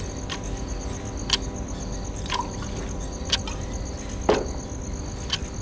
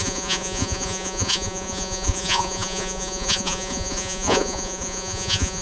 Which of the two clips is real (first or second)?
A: first